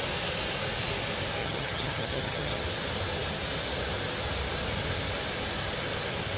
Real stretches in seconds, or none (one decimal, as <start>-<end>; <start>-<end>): 0.0-1.4; 2.6-6.4